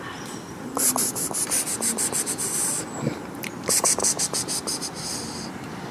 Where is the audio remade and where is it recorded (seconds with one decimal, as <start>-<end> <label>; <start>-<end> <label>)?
0.0-5.9 remade